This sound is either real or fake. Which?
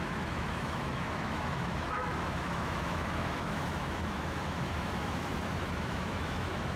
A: fake